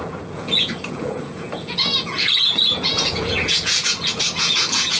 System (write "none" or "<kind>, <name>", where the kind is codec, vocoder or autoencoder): vocoder, Vocos